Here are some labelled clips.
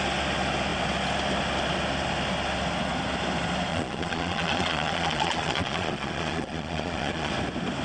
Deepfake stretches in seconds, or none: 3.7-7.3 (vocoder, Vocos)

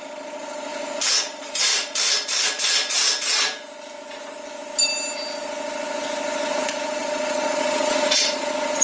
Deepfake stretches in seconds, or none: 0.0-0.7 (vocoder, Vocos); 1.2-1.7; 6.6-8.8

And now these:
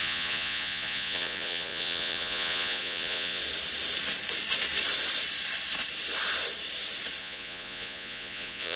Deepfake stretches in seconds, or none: 0.0-3.4 (vocoder, Vocos); 7.2-8.8